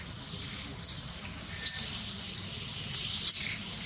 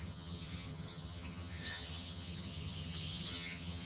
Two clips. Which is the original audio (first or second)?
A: first